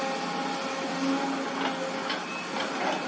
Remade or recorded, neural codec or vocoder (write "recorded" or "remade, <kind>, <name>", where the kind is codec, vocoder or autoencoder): recorded